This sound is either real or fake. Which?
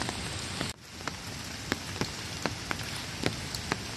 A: real